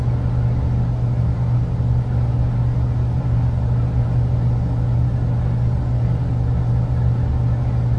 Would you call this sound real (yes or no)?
yes